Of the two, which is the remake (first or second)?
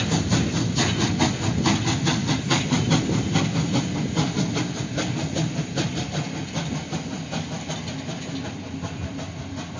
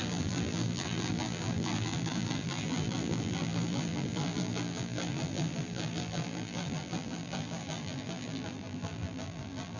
second